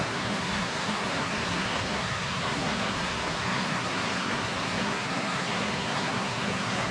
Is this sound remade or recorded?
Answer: remade